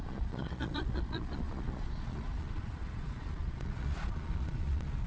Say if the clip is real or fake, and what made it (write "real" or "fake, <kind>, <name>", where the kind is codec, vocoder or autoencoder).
fake, vocoder, Vocos